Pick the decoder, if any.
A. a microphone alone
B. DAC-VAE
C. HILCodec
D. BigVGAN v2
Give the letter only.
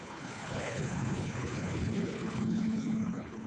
C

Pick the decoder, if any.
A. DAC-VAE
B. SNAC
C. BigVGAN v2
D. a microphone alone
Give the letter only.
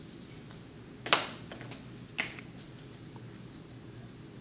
D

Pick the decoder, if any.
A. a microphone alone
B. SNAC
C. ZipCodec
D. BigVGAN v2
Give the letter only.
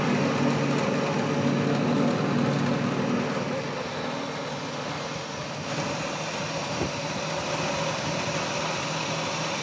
A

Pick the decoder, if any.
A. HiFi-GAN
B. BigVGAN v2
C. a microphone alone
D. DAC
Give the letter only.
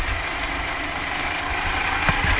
C